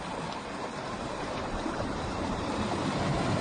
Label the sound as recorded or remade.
remade